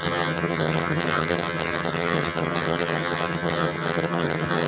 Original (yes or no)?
no